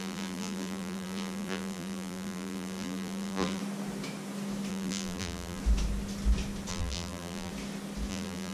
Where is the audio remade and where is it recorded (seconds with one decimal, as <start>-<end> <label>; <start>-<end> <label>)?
0.0-3.6 remade; 3.6-4.7 recorded; 4.7-5.6 remade; 5.6-6.7 recorded; 6.7-7.5 remade; 7.5-8.1 recorded; 8.1-8.5 remade